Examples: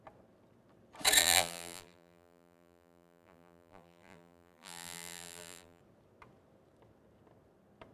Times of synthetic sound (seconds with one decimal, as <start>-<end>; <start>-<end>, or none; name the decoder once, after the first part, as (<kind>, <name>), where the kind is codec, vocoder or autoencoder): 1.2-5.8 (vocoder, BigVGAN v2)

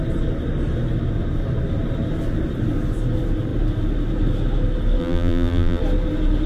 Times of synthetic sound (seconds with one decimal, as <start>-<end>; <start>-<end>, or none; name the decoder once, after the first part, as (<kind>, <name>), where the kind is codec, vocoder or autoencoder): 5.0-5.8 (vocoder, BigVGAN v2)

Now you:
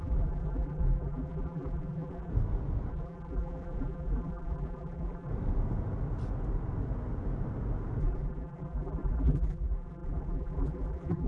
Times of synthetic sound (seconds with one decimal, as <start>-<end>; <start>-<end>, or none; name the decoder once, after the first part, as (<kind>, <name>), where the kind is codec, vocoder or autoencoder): 0.0-2.3 (vocoder, BigVGAN v2); 2.9-5.3; 8.0-11.3